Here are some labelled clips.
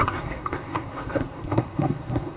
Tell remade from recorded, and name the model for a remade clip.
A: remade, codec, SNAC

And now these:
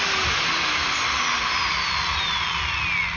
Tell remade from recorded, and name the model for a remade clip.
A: recorded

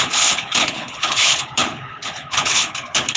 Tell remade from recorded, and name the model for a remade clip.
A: remade, codec, HILCodec